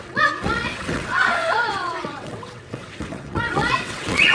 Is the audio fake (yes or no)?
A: yes